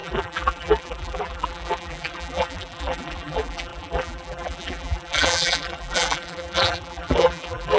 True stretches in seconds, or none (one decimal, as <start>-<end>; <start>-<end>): none